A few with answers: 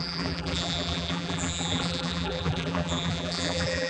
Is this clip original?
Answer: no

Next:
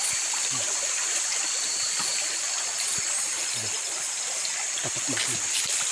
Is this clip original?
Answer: yes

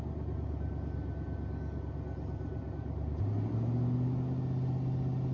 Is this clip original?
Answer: yes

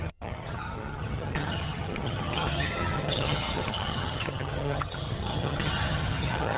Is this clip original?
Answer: no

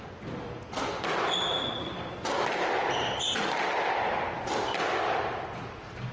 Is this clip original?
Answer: yes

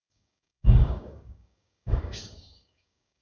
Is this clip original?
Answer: no